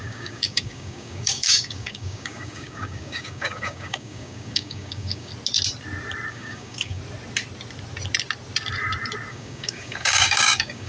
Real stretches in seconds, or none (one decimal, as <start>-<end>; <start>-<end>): 5.3-6.3; 7.0-9.3